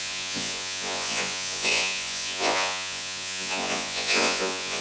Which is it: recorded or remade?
remade